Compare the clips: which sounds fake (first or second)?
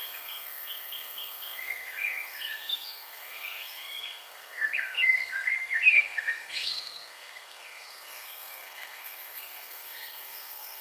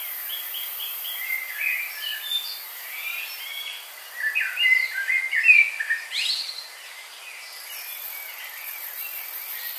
first